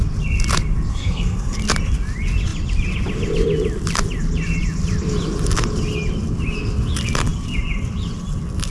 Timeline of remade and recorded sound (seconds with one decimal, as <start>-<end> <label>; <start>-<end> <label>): 0.0-0.9 recorded; 0.9-1.6 remade; 1.6-8.7 recorded